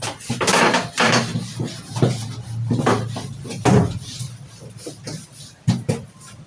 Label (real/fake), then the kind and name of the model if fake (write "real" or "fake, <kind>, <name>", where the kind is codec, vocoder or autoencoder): real